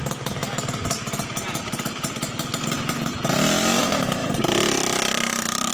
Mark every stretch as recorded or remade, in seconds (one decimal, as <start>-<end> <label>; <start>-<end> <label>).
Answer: 0.0-4.2 recorded; 4.2-5.7 remade